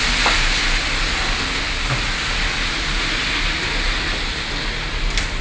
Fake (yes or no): no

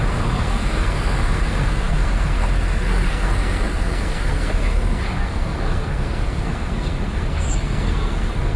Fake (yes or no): yes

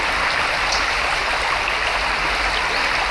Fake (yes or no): no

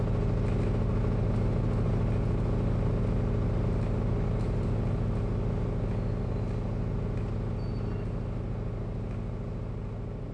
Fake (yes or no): no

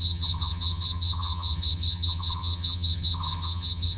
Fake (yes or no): yes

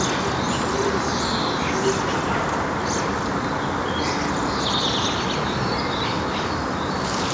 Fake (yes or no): no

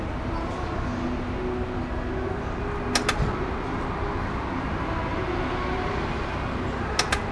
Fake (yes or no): no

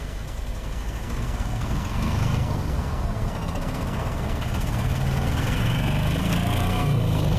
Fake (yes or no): yes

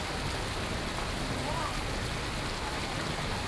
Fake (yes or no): no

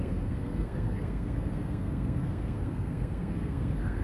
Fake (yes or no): yes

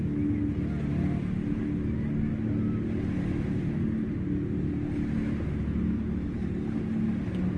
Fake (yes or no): no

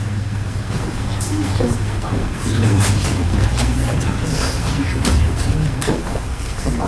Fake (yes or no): yes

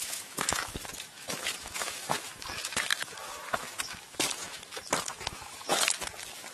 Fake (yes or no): yes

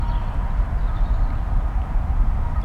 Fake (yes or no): no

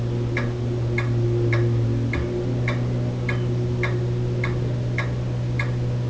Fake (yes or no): no